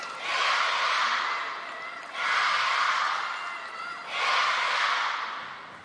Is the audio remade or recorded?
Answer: recorded